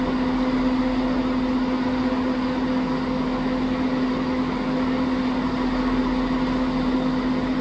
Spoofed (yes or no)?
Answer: no